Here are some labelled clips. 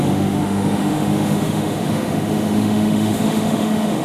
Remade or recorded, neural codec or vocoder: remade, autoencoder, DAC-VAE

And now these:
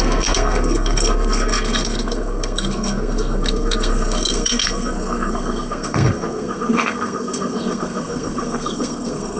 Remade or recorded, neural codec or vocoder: remade, codec, SNAC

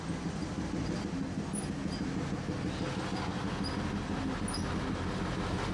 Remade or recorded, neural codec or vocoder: recorded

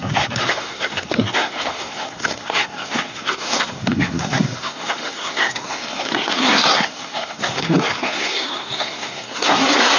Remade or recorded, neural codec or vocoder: remade, codec, SNAC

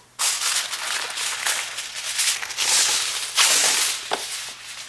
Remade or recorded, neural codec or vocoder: recorded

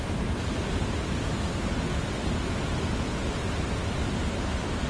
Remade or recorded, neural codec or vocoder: recorded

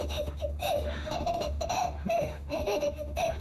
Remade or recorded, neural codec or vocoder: remade, autoencoder, DAC-VAE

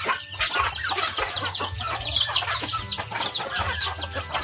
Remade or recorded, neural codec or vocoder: recorded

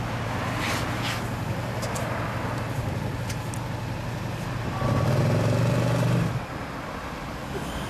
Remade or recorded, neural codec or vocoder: recorded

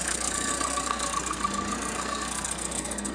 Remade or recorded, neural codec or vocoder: remade, codec, SNAC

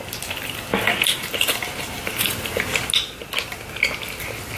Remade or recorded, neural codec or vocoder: recorded